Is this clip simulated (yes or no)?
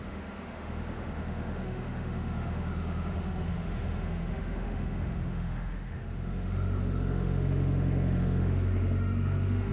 yes